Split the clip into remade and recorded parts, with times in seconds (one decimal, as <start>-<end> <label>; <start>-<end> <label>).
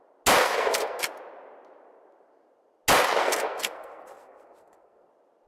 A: 0.0-0.4 recorded; 0.4-1.0 remade; 1.0-3.2 recorded; 3.2-5.1 remade; 5.1-5.5 recorded